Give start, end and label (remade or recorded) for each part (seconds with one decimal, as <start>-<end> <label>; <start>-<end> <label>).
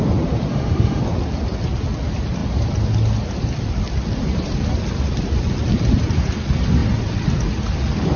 0.0-0.5 recorded; 0.5-1.0 remade; 1.0-8.2 recorded